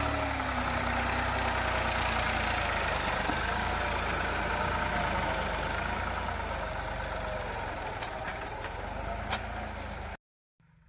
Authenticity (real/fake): real